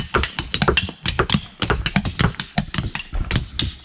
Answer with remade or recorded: recorded